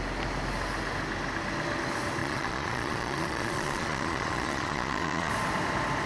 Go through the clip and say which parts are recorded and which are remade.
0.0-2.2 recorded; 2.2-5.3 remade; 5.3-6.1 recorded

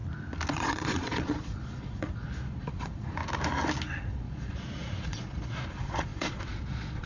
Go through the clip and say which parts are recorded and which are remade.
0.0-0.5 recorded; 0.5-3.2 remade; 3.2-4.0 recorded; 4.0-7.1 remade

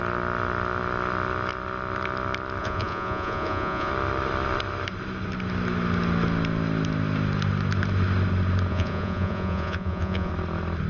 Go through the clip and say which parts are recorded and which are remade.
0.0-2.6 recorded; 2.6-3.9 remade; 3.9-8.7 recorded; 8.7-10.3 remade; 10.3-10.9 recorded

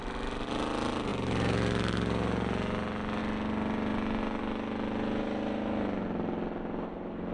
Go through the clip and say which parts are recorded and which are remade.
0.0-7.3 recorded

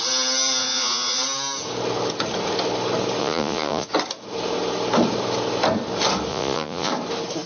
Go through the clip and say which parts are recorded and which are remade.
0.0-0.6 recorded; 0.6-1.2 remade; 1.2-3.2 recorded; 3.2-3.9 remade; 3.9-6.3 recorded; 6.3-6.9 remade; 6.9-7.5 recorded

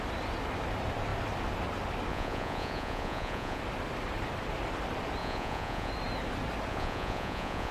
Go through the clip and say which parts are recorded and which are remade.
0.0-2.1 recorded; 2.1-3.6 remade; 3.6-5.2 recorded; 5.2-5.9 remade; 5.9-6.7 recorded; 6.7-7.7 remade